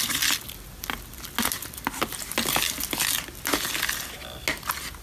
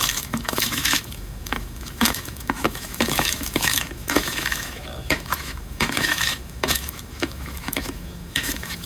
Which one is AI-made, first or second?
second